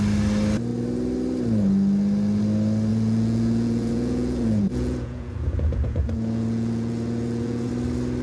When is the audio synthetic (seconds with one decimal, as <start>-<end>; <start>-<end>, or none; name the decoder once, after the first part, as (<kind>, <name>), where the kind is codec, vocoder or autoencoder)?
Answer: 2.9-7.7 (vocoder, Vocos)